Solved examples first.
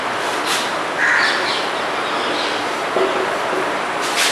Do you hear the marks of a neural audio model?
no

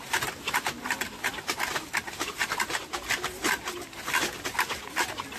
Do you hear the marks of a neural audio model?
no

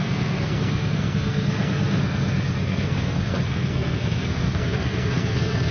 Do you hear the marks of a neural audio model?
yes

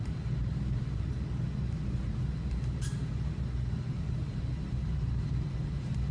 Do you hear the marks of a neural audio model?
no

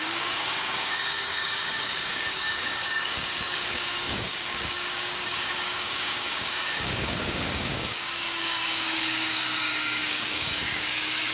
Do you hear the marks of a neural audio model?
yes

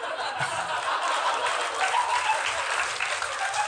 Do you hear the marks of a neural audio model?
no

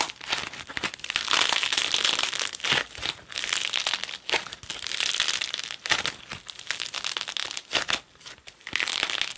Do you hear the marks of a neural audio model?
no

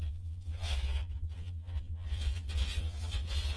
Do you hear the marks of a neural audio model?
yes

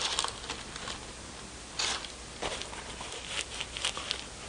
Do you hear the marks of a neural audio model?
no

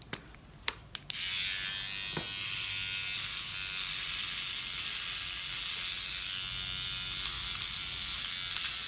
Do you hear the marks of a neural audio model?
no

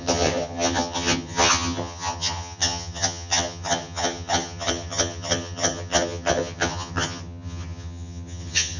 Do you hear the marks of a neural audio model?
yes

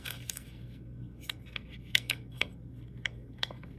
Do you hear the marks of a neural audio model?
yes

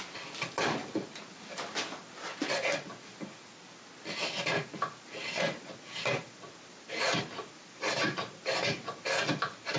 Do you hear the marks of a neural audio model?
no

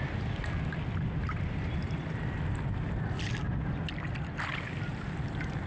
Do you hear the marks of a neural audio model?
no